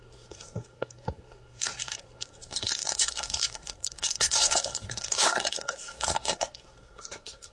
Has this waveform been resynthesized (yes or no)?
yes